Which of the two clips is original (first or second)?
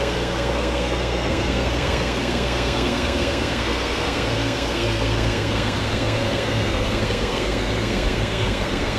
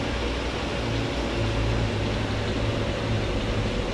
second